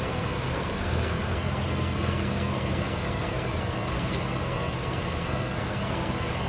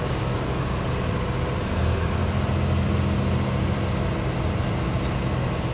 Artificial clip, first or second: first